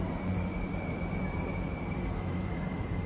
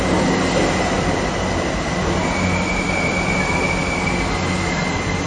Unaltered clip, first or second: second